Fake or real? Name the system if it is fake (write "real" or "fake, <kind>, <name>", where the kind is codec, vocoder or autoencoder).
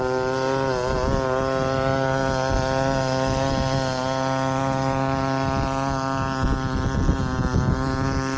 real